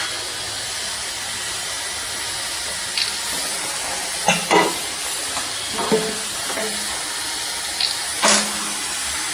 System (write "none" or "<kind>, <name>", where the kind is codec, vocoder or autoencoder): none